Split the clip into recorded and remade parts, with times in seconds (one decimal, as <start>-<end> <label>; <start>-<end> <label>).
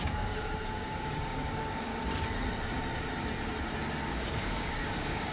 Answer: 0.0-1.9 remade; 1.9-4.1 recorded; 4.1-5.3 remade